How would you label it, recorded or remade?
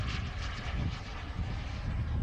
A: recorded